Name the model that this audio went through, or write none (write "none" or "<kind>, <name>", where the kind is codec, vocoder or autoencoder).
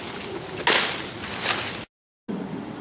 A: none